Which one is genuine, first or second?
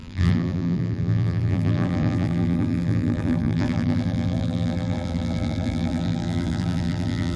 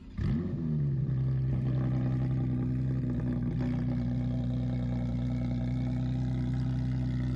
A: second